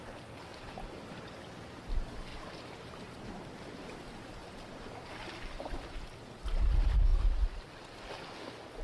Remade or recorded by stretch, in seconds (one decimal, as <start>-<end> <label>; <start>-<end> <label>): 0.0-0.5 recorded; 0.5-1.8 remade; 1.8-2.3 recorded; 2.3-4.0 remade; 4.0-8.8 recorded